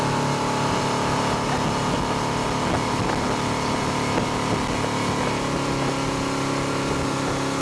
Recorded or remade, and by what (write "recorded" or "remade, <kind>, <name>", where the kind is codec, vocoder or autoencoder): recorded